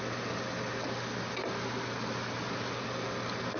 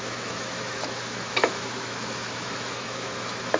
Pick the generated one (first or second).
second